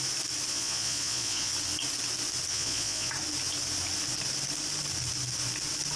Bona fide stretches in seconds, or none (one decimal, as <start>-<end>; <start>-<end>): 0.0-0.5; 1.5-2.5; 3.1-6.0